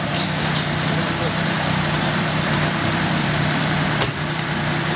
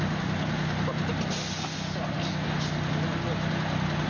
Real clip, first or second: second